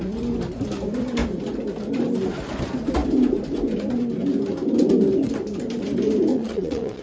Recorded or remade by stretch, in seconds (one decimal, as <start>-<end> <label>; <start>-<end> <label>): 0.0-6.3 recorded; 6.3-7.0 remade